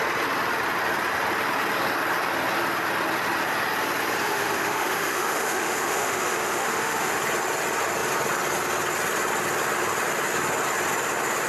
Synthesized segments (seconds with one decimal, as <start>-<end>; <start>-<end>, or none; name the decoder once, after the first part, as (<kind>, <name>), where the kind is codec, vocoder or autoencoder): 4.2-7.2 (autoencoder, DAC-VAE)